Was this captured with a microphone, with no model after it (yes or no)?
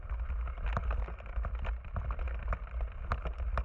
yes